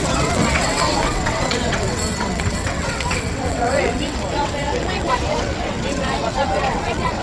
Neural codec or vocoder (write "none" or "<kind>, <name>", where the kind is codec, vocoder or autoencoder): vocoder, WaveNeXt